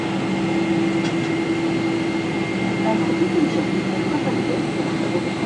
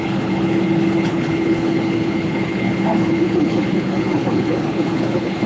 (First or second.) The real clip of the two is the first